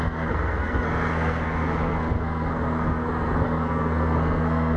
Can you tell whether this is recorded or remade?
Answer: remade